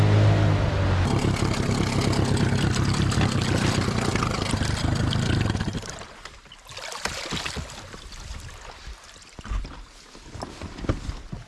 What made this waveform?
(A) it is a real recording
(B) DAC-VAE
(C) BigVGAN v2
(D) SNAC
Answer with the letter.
A